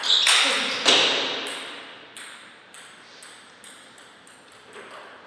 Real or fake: real